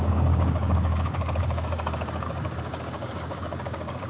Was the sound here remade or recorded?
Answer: remade